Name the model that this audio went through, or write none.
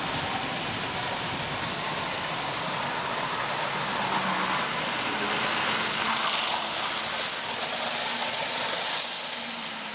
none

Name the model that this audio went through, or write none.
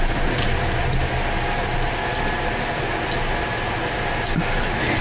none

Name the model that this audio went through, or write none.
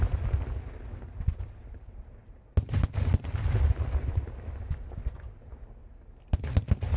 none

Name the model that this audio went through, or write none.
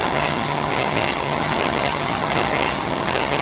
vocoder, HiFi-GAN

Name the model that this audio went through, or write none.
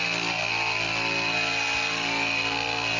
none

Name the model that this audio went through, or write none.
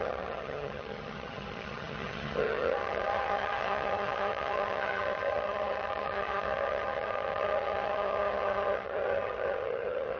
vocoder, HiFi-GAN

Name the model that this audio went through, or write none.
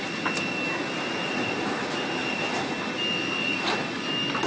none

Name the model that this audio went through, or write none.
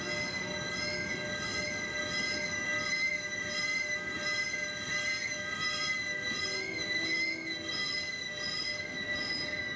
none